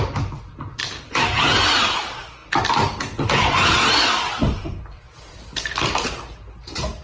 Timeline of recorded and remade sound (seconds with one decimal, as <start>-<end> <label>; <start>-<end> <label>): 0.0-7.0 recorded